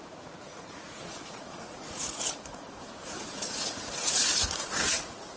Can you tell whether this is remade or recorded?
remade